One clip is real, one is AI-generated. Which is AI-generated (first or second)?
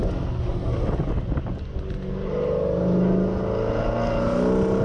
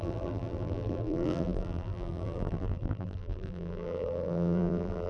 second